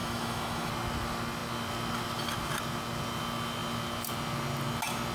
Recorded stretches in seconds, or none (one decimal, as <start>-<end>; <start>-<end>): 0.7-5.1